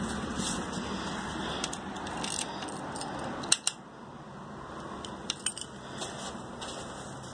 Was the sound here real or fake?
real